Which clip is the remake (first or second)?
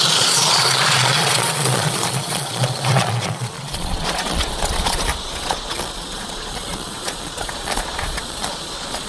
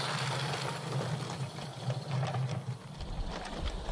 first